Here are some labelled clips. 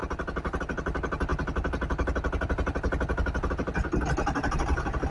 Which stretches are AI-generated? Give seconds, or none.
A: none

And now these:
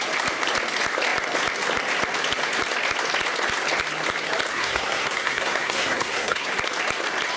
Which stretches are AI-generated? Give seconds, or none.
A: 4.5-6.5 (codec, SNAC)

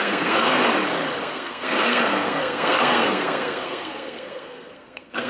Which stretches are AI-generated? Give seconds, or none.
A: 0.0-0.6 (codec, SNAC); 1.2-5.3

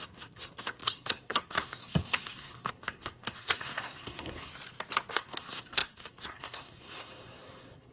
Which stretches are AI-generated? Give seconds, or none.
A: 0.0-4.5 (codec, SNAC); 5.1-7.9

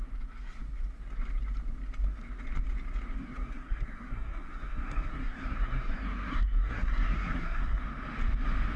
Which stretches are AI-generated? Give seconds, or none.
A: 3.2-7.8 (codec, SNAC)